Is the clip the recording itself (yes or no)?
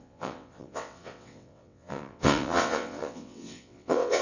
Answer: no